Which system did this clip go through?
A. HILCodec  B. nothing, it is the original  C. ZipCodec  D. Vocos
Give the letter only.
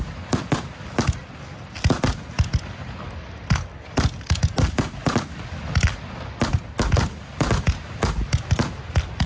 B